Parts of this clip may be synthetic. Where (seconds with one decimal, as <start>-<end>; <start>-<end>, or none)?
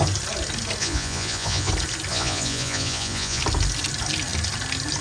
0.8-1.7; 2.1-3.4